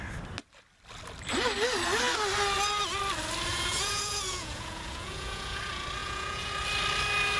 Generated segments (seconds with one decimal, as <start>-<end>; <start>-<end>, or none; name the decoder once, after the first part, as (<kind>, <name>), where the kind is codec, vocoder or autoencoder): 3.5-5.6 (vocoder, Vocos); 6.0-6.5